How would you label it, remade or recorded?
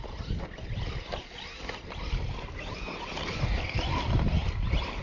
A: recorded